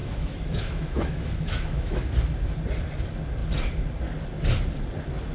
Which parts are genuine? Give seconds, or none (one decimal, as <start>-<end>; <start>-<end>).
2.0-5.3